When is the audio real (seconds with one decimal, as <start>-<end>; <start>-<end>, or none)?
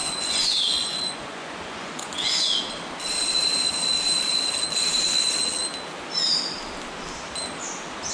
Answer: 2.6-8.1